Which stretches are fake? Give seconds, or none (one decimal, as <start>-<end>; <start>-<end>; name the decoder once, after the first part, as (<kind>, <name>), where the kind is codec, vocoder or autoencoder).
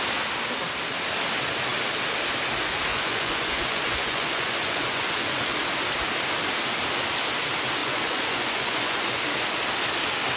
2.9-5.4 (vocoder, Vocos); 7.8-9.2